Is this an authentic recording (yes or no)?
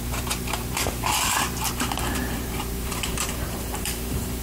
no